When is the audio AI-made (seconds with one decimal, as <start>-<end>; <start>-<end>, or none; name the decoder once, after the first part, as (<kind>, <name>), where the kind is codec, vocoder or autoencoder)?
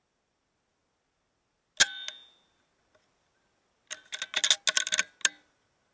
none